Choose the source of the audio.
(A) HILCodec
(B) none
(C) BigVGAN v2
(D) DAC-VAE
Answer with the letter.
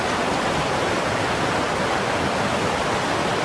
B